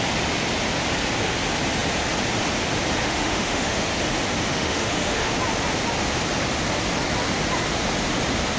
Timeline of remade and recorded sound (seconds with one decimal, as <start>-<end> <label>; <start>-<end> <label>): 0.0-3.0 recorded; 3.0-3.9 remade; 3.9-4.5 recorded; 4.5-5.3 remade; 5.3-8.6 recorded